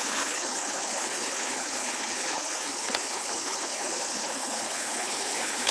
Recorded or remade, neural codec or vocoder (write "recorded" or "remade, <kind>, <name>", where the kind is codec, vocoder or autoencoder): remade, codec, HILCodec